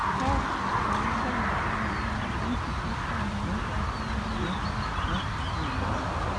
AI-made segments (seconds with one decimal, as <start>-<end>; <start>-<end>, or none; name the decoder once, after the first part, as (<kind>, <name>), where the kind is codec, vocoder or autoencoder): none